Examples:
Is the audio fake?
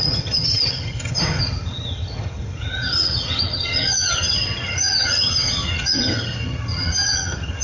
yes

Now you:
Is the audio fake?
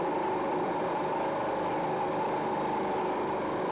yes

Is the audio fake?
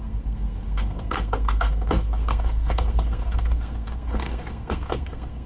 yes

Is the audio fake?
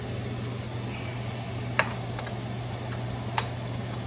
no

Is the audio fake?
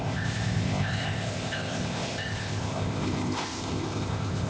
yes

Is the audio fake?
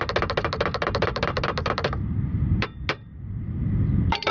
no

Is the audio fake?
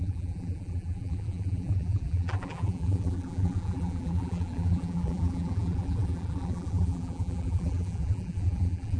yes